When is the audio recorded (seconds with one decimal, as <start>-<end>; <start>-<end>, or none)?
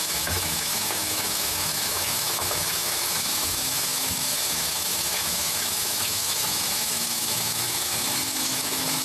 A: none